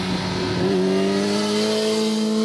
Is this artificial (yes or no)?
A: no